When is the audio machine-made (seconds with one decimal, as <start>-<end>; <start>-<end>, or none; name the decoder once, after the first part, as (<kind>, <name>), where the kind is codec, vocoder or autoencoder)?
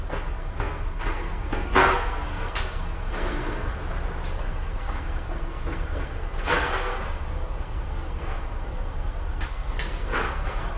0.0-3.8 (codec, SNAC); 4.3-10.8